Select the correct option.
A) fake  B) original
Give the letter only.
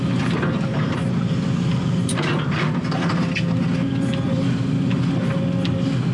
B